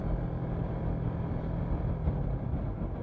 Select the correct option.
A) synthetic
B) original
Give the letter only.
B